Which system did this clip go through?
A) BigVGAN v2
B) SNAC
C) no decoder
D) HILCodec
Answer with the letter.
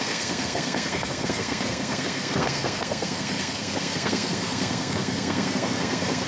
B